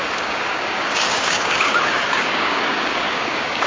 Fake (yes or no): yes